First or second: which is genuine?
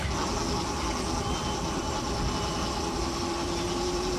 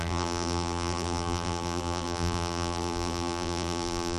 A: first